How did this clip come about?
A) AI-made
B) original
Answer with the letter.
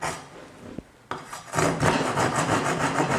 B